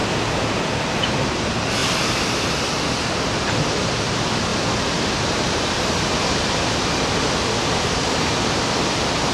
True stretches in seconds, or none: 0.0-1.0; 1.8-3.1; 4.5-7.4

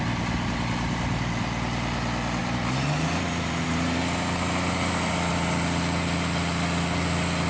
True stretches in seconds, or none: 0.0-2.4; 5.3-7.5

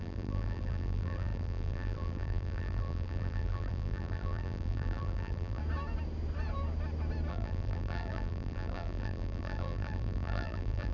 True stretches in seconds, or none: 5.6-7.3

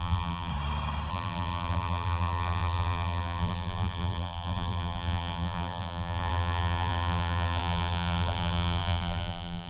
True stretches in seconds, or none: 0.5-1.1

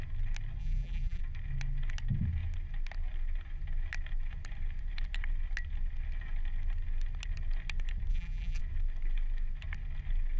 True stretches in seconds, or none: 0.0-0.6; 1.2-8.1; 8.6-10.4

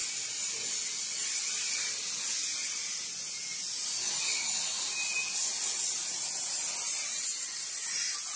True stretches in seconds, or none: 0.0-8.4

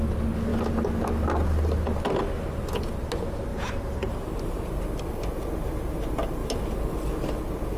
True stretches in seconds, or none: 0.0-3.5; 4.8-7.8

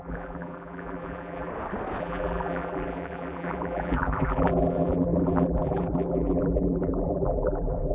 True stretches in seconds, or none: 1.5-2.0